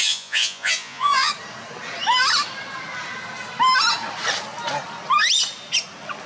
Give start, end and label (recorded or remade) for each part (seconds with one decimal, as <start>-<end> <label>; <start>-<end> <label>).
0.0-1.3 remade; 1.3-6.3 recorded